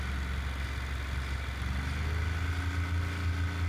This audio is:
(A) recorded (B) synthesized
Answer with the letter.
A